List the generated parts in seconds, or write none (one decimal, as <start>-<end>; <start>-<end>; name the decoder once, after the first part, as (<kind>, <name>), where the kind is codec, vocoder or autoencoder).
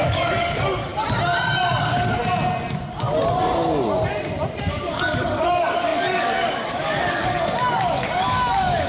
0.0-0.9 (codec, DAC); 1.8-2.2; 4.6-8.9